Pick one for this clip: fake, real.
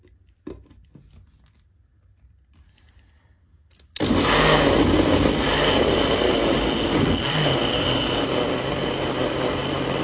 real